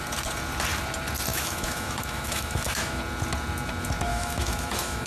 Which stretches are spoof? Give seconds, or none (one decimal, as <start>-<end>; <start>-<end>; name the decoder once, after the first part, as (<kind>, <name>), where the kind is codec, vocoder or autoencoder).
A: 1.3-3.0 (autoencoder, DAC-VAE); 4.1-5.1